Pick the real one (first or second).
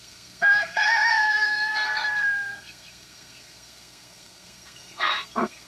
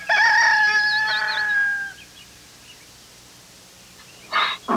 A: second